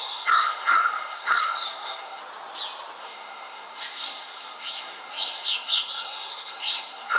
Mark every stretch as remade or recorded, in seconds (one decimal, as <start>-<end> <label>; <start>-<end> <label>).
0.0-2.2 remade; 2.2-3.0 recorded; 3.0-7.2 remade